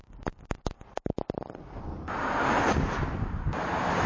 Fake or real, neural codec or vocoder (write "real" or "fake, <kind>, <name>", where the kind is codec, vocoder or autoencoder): real